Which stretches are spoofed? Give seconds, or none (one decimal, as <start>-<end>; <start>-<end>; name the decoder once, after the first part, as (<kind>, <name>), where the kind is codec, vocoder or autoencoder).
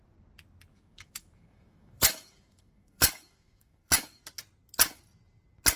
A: 0.7-4.2 (autoencoder, DAC-VAE)